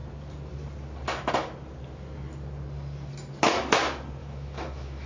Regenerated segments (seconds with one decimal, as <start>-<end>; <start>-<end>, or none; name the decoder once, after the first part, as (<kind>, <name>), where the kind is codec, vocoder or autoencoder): 4.2-5.1 (autoencoder, DAC-VAE)